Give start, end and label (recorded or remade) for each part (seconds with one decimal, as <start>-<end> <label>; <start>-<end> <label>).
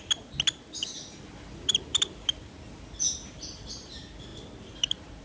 0.0-5.2 recorded